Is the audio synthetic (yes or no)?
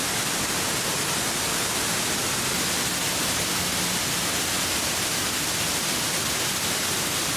no